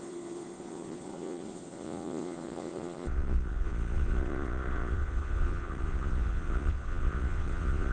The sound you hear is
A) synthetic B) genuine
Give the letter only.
A